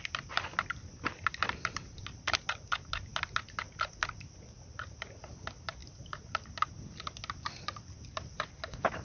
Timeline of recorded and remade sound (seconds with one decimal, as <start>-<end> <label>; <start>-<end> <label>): 0.0-9.0 recorded